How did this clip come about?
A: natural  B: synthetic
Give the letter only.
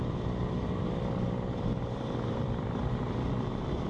B